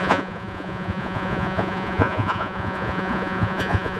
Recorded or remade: remade